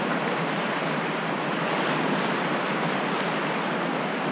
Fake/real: real